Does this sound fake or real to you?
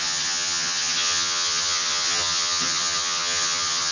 fake